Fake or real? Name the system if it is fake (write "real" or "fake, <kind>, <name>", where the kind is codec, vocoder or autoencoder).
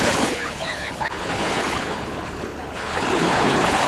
fake, codec, HILCodec